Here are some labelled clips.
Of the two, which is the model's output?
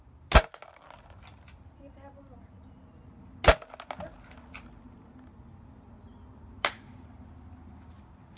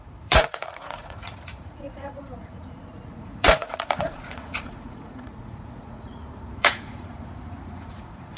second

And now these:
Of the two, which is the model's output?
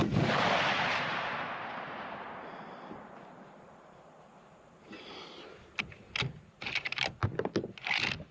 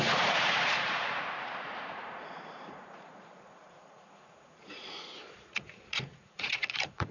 second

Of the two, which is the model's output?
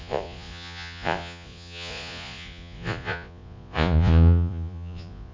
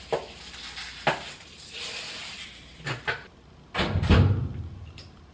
first